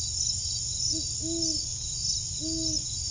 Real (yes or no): yes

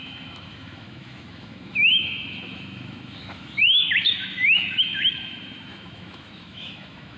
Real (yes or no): no